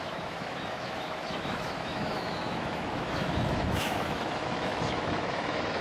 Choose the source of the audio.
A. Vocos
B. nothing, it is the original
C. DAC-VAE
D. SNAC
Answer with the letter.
C